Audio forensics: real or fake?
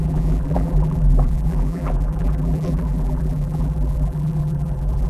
fake